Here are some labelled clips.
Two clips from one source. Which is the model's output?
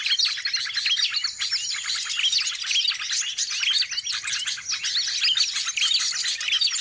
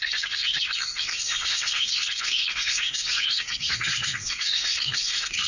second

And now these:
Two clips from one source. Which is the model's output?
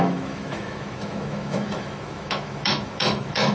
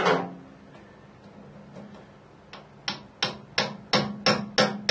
first